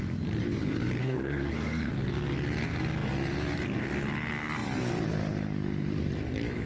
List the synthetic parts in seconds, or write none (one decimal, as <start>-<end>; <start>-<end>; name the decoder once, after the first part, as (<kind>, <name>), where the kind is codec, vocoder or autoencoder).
1.0-1.9 (codec, SNAC)